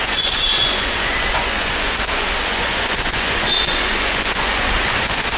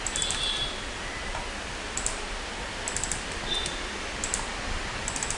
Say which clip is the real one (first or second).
second